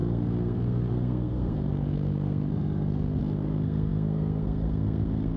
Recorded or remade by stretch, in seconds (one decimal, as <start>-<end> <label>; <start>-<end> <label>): 0.0-5.4 remade